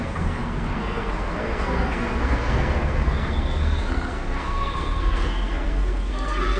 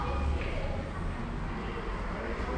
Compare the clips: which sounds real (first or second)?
second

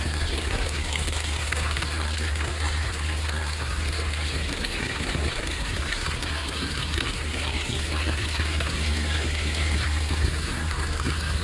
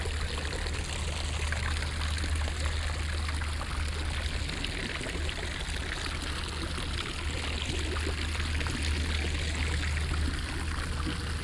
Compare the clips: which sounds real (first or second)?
second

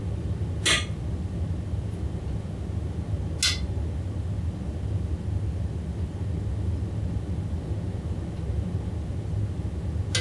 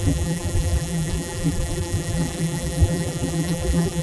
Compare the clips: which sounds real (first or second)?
first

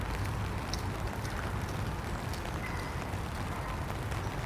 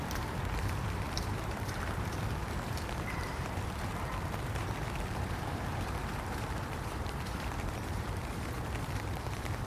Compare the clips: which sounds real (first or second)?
first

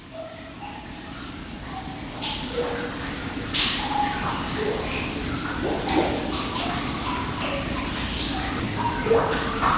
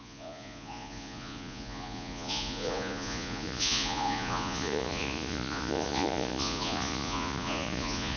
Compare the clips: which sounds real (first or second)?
first